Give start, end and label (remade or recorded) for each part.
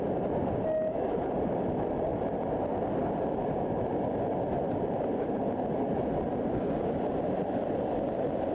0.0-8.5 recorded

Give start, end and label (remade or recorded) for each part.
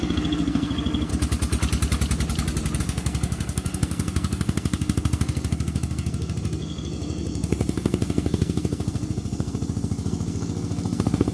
0.0-1.1 remade; 1.1-2.8 recorded; 2.8-11.3 remade